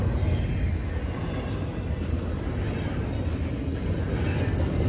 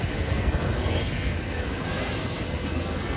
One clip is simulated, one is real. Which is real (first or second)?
first